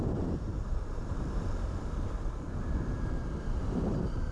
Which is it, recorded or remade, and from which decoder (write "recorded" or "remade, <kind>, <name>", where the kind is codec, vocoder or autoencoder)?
remade, vocoder, BigVGAN v2